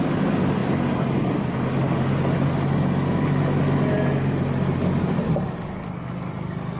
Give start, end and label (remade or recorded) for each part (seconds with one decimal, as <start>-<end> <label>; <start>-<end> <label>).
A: 0.0-6.8 recorded